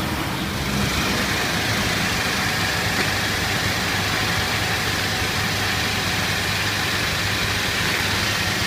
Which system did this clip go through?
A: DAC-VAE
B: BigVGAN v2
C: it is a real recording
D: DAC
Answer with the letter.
C